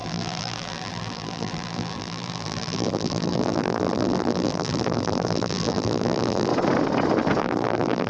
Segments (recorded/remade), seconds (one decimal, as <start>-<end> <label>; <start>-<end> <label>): 0.0-6.5 remade; 6.5-7.4 recorded; 7.4-8.1 remade

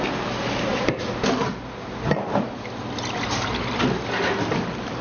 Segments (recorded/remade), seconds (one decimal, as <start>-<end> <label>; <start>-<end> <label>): 0.0-5.0 recorded

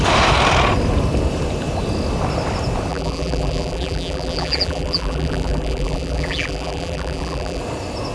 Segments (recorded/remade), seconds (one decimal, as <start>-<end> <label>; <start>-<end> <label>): 0.0-2.9 recorded; 2.9-7.6 remade; 7.6-8.1 recorded

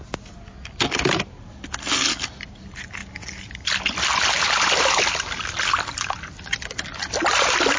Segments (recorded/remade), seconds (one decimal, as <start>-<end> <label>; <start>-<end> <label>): 0.0-7.8 recorded

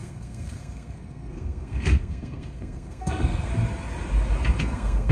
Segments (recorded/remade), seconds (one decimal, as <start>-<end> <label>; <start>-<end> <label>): 0.0-3.5 remade; 3.5-4.6 recorded; 4.6-5.1 remade

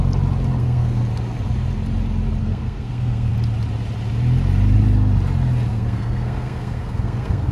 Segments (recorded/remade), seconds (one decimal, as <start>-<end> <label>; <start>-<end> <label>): 0.0-0.6 recorded; 0.6-1.0 remade; 1.0-2.4 recorded; 2.4-3.3 remade; 3.3-5.7 recorded; 5.7-7.5 remade

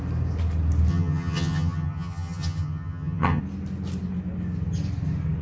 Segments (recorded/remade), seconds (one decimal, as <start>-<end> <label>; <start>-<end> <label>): 0.0-0.9 recorded; 0.9-3.4 remade; 3.4-5.4 recorded

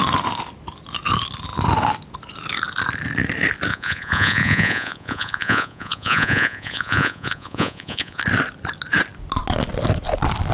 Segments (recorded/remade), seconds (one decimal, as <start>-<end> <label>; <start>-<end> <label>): 0.0-3.7 recorded; 3.7-8.2 remade; 8.2-10.5 recorded